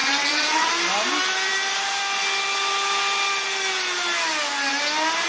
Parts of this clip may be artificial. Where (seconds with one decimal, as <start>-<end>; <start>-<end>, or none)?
0.0-0.7